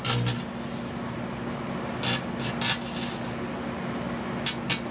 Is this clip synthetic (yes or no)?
no